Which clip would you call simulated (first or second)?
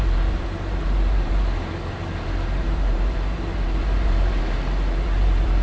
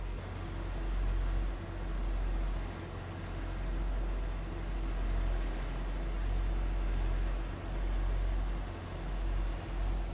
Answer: first